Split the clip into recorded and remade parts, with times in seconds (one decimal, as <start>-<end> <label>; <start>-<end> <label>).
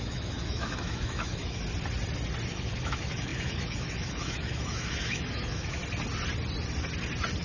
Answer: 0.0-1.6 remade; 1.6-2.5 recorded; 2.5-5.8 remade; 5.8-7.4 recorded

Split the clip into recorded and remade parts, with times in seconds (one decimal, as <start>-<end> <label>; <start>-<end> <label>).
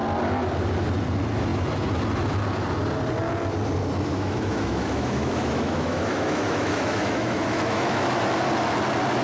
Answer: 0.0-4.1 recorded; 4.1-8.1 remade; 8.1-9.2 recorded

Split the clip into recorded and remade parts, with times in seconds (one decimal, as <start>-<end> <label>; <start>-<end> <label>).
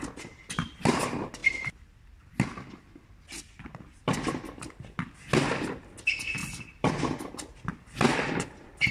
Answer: 0.0-8.9 recorded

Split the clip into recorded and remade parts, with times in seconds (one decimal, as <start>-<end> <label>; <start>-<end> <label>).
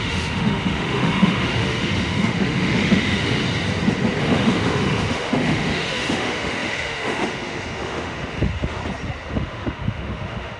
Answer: 0.0-3.4 remade; 3.4-4.2 recorded; 4.2-8.8 remade; 8.8-9.3 recorded; 9.3-10.6 remade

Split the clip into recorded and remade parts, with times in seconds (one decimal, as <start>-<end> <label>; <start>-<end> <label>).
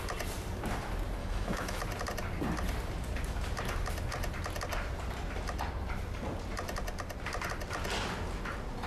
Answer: 0.0-1.2 recorded; 1.2-1.8 remade; 1.8-8.9 recorded